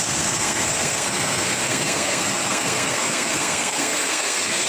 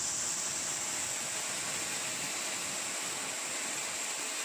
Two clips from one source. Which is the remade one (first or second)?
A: first